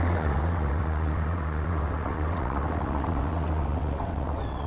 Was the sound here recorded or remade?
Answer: remade